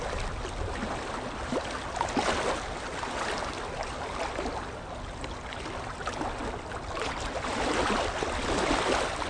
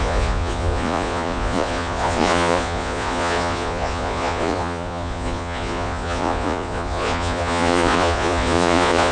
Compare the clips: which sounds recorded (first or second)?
first